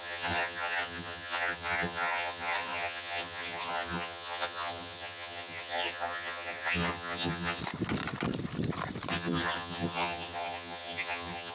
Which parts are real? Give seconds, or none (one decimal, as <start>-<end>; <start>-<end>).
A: 7.6-9.1